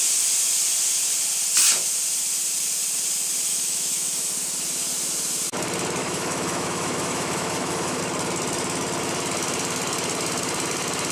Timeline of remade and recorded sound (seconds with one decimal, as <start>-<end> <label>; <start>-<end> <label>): 0.0-3.5 recorded; 3.5-4.3 remade; 4.3-6.0 recorded; 6.0-8.0 remade; 8.0-11.1 recorded